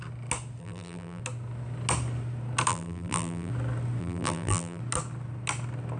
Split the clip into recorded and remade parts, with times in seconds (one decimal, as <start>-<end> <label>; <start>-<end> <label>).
0.0-0.6 recorded; 0.6-1.2 remade; 1.2-2.7 recorded; 2.7-3.5 remade; 3.5-4.0 recorded; 4.0-4.8 remade; 4.8-6.0 recorded